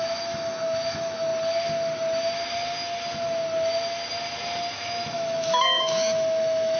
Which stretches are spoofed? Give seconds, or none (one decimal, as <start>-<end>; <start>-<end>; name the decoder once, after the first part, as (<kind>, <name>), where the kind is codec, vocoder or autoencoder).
0.0-1.3 (autoencoder, DAC-VAE); 4.7-6.8